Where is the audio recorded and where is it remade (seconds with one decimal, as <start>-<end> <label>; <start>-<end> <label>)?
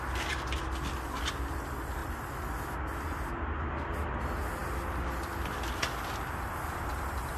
0.0-7.4 recorded